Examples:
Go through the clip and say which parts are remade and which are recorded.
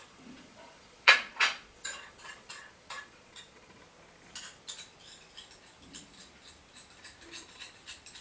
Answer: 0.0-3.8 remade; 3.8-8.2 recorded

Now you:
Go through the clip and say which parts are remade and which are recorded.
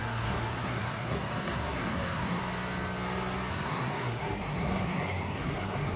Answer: 0.0-2.4 remade; 2.4-3.5 recorded; 3.5-6.0 remade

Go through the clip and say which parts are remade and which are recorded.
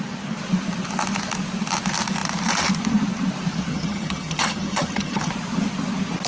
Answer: 0.0-3.7 recorded; 3.7-5.3 remade; 5.3-6.3 recorded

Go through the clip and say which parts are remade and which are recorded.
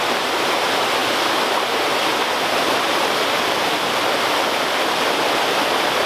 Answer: 0.0-6.1 recorded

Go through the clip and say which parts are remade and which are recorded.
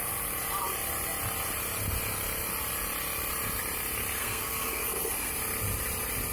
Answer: 0.0-4.2 recorded; 4.2-5.3 remade; 5.3-6.3 recorded